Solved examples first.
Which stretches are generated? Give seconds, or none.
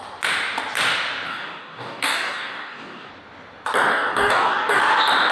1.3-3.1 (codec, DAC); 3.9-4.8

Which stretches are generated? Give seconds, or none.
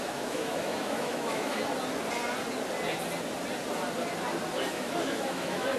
0.0-1.6 (autoencoder, DAC-VAE); 4.7-5.8